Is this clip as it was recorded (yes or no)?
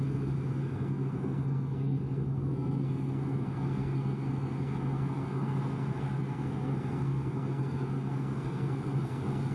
no